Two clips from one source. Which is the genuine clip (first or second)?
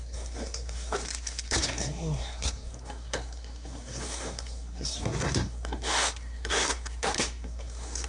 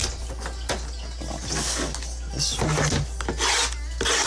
second